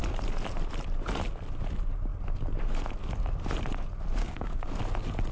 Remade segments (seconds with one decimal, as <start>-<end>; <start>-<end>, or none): 4.2-4.8